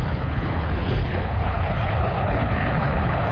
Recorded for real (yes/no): no